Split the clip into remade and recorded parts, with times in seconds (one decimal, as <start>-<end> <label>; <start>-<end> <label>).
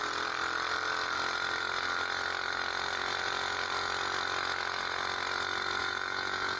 0.0-5.8 recorded; 5.8-6.6 remade